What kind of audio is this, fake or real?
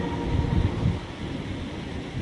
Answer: real